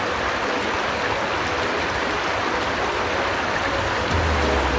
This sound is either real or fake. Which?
real